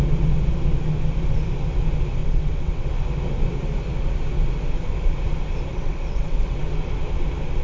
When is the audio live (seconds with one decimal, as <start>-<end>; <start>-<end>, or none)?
0.0-2.2; 2.9-5.7; 6.6-7.6